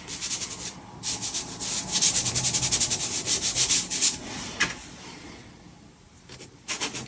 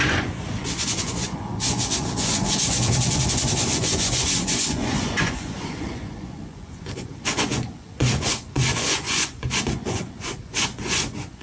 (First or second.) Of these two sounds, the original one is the first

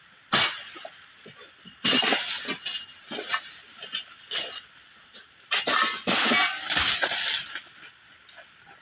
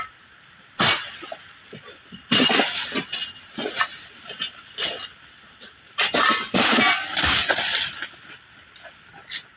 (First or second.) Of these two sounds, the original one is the first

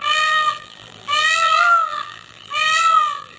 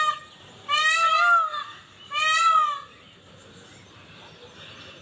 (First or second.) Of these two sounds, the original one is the second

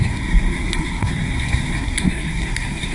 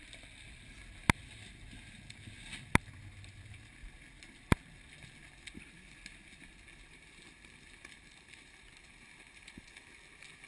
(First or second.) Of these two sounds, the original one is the second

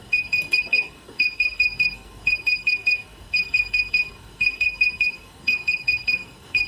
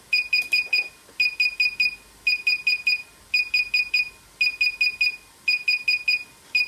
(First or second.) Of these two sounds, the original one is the second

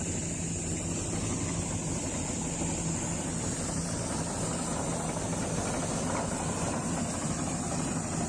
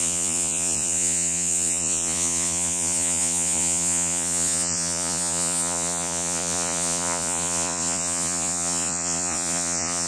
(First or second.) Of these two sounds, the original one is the first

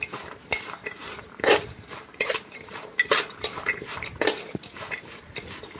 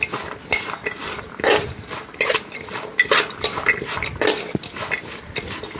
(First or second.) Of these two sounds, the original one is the second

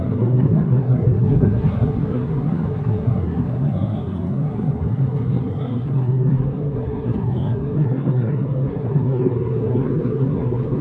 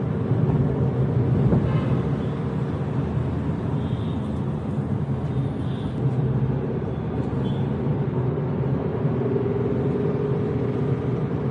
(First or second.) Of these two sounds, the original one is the second